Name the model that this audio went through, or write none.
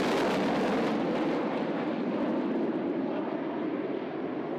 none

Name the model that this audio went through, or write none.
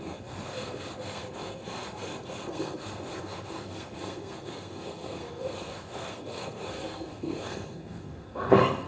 codec, SNAC